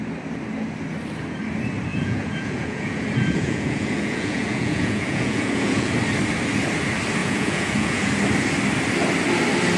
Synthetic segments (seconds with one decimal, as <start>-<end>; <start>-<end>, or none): 1.9-5.9; 7.2-8.1